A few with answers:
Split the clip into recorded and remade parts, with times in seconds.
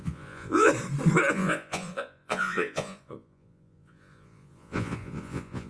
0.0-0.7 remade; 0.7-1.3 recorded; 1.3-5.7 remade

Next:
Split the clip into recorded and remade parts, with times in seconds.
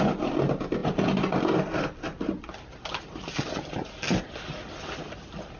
0.0-5.6 recorded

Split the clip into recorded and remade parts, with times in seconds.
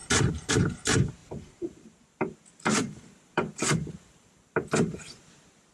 0.0-0.5 remade; 0.5-1.2 recorded; 1.2-2.4 remade; 2.4-2.8 recorded; 2.8-5.2 remade; 5.2-5.7 recorded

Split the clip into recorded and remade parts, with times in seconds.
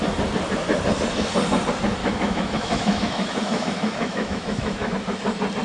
0.0-2.0 recorded; 2.0-4.9 remade; 4.9-5.6 recorded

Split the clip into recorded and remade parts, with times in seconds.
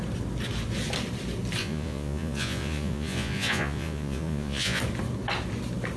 0.0-1.6 recorded; 1.6-4.8 remade; 4.8-6.0 recorded